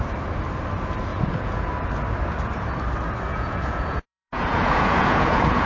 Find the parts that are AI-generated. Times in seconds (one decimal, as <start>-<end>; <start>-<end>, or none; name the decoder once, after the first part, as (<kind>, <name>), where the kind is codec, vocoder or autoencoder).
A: 1.1-1.7 (vocoder, Vocos); 3.3-5.7